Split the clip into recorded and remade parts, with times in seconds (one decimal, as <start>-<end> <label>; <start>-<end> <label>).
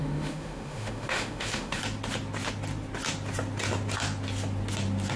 0.0-1.8 remade; 1.8-5.2 recorded